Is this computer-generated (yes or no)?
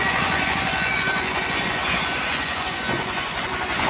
yes